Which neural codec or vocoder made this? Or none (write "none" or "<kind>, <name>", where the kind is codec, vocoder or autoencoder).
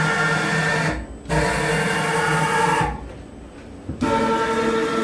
none